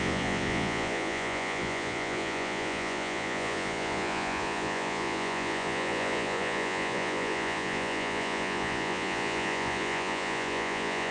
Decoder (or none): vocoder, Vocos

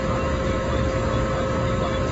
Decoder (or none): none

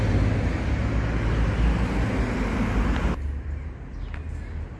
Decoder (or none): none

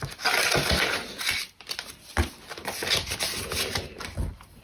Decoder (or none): none